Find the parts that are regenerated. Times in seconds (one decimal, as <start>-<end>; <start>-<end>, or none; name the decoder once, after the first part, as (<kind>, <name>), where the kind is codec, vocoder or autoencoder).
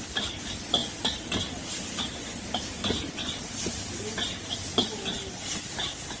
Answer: none